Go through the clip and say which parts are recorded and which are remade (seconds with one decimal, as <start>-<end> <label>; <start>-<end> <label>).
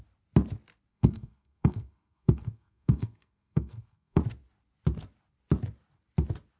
0.0-0.9 recorded; 0.9-4.2 remade; 4.2-6.6 recorded